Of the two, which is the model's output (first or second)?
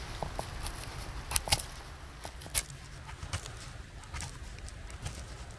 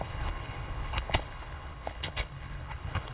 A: second